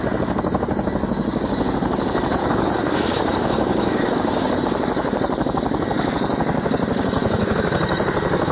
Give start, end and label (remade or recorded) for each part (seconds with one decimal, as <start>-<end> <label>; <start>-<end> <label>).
0.0-2.4 recorded; 2.4-4.6 remade; 4.6-7.2 recorded; 7.2-7.7 remade; 7.7-8.5 recorded